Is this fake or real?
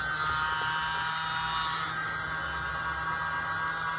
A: real